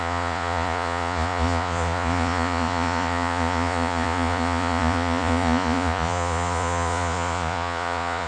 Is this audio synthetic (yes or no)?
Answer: yes